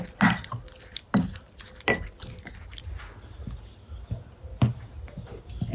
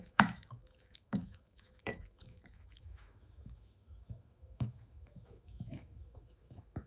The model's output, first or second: second